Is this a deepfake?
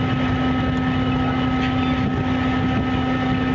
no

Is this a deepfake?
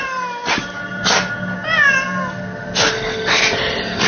no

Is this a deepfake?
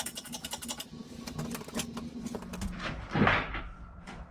no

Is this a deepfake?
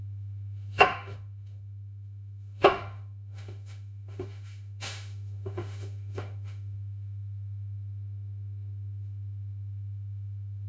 yes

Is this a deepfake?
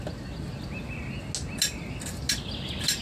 no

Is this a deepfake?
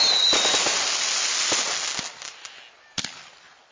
no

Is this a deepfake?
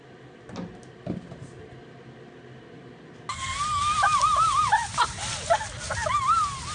no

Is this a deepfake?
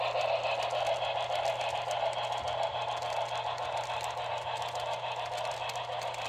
no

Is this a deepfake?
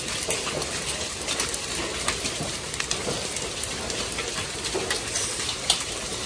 no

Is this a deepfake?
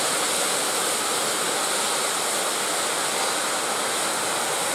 no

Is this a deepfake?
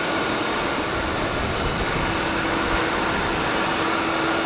no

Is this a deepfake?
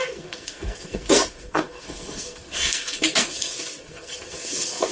yes